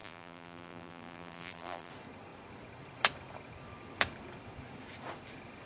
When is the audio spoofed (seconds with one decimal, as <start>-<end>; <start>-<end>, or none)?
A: 0.0-1.9

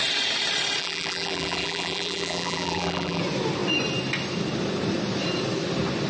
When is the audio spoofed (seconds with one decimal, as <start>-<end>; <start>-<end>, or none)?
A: 0.8-3.2

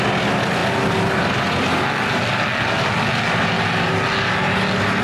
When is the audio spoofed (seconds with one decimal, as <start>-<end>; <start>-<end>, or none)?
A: none

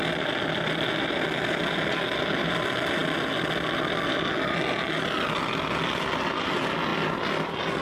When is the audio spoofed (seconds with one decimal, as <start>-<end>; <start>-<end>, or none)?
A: none